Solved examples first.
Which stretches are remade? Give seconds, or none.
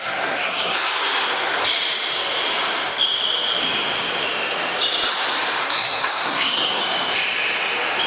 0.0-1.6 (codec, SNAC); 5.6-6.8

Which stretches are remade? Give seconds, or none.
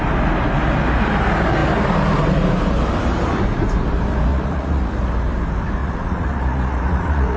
4.3-4.9 (vocoder, Vocos); 5.8-7.4